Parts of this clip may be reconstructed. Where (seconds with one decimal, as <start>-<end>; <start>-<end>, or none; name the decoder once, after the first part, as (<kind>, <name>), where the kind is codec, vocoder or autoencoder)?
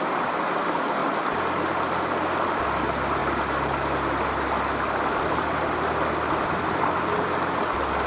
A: none